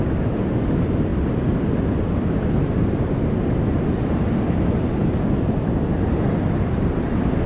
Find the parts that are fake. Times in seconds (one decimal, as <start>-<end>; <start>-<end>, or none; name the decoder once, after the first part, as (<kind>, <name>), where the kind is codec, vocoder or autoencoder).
none

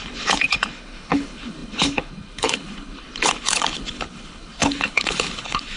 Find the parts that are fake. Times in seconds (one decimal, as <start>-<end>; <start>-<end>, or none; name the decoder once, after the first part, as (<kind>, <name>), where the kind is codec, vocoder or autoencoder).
0.0-5.8 (codec, HILCodec)

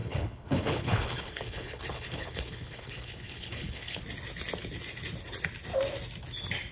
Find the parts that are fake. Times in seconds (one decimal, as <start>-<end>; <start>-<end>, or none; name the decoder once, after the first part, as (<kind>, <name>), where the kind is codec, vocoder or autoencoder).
0.0-4.0 (codec, HILCodec)